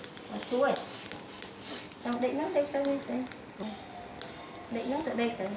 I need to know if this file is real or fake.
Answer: real